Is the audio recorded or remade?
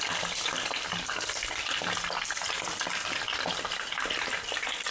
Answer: recorded